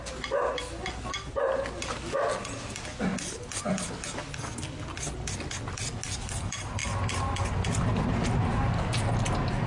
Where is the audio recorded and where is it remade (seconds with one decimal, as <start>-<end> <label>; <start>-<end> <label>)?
0.0-9.7 recorded

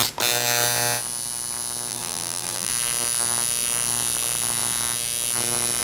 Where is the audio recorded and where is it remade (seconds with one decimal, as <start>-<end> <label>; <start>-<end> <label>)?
0.0-1.9 recorded; 1.9-2.7 remade; 2.7-5.8 recorded

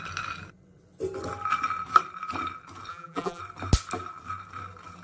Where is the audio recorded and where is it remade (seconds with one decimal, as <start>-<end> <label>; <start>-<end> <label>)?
0.0-2.9 recorded; 2.9-3.4 remade; 3.4-5.0 recorded

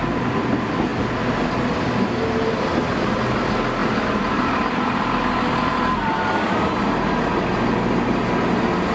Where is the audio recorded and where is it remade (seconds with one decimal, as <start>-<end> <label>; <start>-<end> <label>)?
0.0-3.8 recorded; 3.8-4.6 remade; 4.6-8.9 recorded

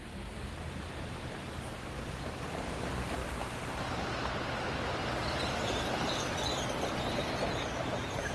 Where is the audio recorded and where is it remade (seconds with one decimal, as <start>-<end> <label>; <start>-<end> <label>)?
0.0-5.0 remade; 5.0-5.9 recorded; 5.9-6.5 remade; 6.5-7.1 recorded; 7.1-8.3 remade